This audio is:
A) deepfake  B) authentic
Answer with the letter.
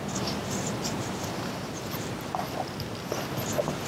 B